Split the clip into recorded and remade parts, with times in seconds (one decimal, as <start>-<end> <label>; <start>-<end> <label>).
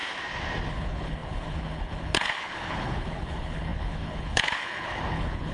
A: 0.0-0.7 recorded; 0.7-5.5 remade